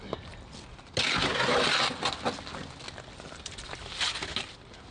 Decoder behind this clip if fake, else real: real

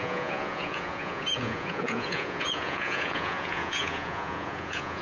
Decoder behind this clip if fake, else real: fake, vocoder, Vocos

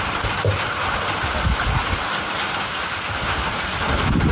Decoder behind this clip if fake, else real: real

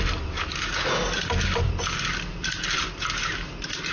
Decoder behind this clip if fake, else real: real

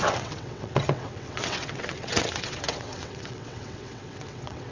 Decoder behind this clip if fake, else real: fake, vocoder, WaveNeXt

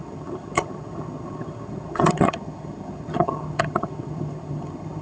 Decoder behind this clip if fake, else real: fake, vocoder, HiFi-GAN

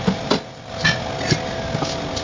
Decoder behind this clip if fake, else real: real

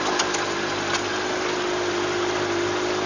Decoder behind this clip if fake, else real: real